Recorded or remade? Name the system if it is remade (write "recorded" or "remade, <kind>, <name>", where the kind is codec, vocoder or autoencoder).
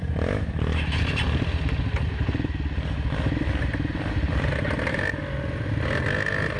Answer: recorded